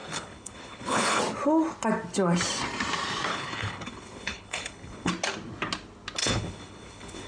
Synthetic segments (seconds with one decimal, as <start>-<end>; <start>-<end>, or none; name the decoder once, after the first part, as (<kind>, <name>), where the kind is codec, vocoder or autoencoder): 0.0-1.2 (codec, HILCodec); 3.3-5.1; 6.2-7.3